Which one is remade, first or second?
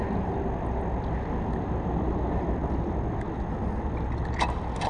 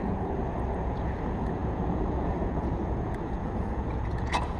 second